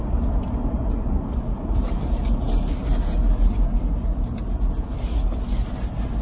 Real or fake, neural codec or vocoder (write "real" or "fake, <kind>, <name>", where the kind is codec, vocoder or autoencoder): real